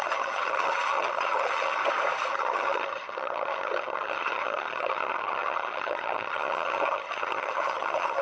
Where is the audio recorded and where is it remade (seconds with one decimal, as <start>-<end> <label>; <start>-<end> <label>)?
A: 0.0-1.8 remade; 1.8-2.3 recorded; 2.3-8.2 remade